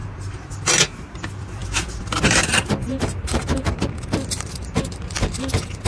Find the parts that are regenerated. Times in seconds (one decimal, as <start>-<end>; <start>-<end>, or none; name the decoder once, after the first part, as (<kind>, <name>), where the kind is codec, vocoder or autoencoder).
0.0-0.5 (vocoder, BigVGAN v2); 1.6-5.1